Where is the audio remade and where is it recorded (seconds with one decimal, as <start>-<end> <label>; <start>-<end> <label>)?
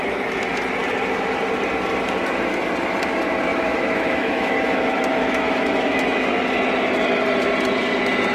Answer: 0.0-3.5 recorded; 3.5-6.3 remade; 6.3-8.3 recorded